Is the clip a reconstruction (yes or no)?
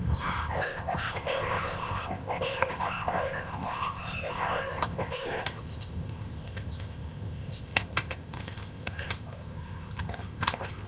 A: yes